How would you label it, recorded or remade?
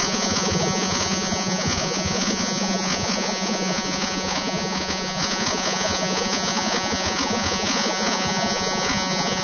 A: remade